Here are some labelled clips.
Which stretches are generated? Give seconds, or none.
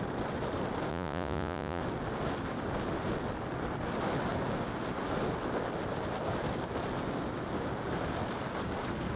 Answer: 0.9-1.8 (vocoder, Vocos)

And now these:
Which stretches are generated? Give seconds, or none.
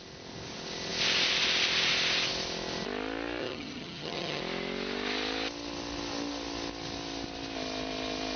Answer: 3.4-4.4 (vocoder, HiFi-GAN)